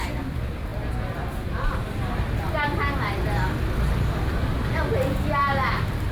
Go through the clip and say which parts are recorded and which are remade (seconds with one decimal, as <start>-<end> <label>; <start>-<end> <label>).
0.0-6.1 recorded

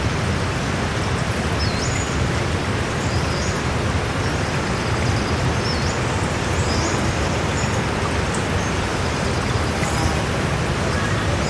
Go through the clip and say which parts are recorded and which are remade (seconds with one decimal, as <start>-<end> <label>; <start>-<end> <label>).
0.0-11.5 recorded

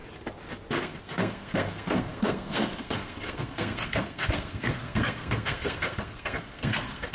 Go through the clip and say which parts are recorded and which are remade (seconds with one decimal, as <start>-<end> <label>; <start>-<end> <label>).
0.0-0.7 recorded; 0.7-7.1 remade

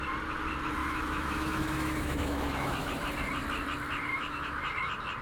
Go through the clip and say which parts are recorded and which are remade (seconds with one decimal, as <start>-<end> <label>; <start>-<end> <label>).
0.0-0.8 recorded; 0.8-2.8 remade; 2.8-4.1 recorded; 4.1-4.6 remade; 4.6-5.2 recorded

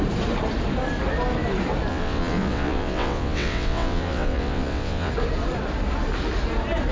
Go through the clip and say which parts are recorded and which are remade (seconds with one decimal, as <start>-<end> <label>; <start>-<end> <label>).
0.0-1.9 recorded; 1.9-5.1 remade; 5.1-6.9 recorded

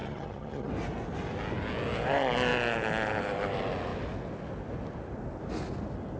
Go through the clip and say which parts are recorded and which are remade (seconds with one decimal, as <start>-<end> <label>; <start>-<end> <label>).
0.0-0.7 remade; 0.7-6.2 recorded

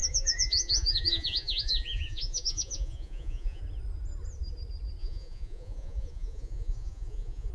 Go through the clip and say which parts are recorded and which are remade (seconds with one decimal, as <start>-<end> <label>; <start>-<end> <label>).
0.0-3.6 remade; 3.6-5.0 recorded; 5.0-7.5 remade